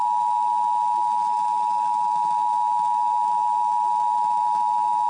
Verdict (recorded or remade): recorded